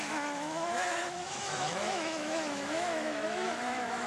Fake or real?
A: fake